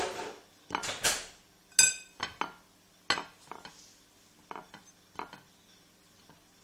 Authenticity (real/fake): real